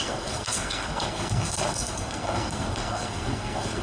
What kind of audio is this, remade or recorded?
remade